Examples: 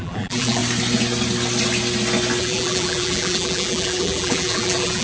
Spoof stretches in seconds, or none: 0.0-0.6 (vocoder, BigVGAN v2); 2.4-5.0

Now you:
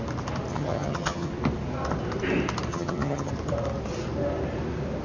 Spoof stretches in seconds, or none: 0.5-1.3 (vocoder, HiFi-GAN); 2.7-3.3

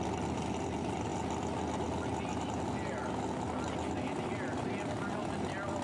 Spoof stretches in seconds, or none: none